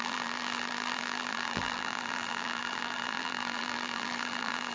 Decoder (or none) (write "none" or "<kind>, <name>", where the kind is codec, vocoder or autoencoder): vocoder, BigVGAN v2